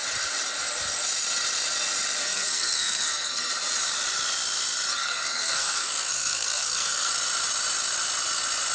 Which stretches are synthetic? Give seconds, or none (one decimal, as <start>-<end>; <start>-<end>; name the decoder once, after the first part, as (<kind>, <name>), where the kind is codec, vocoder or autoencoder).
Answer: 2.2-3.5 (codec, SNAC); 4.9-7.1